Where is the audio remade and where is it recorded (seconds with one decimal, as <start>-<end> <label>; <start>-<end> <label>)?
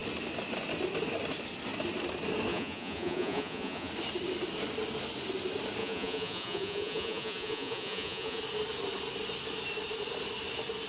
0.0-2.5 recorded; 2.5-3.9 remade; 3.9-5.8 recorded; 5.8-8.4 remade; 8.4-10.9 recorded